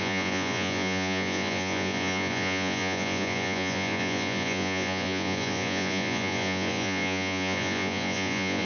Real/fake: fake